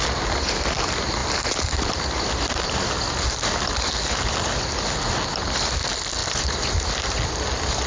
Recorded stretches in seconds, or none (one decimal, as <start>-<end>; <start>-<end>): 0.0-7.9